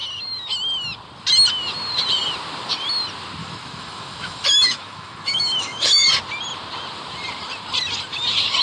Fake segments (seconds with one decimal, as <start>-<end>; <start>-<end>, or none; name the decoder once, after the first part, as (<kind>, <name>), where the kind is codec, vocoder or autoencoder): 3.4-6.1 (autoencoder, DAC-VAE)